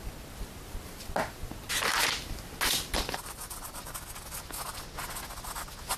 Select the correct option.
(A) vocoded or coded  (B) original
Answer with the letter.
B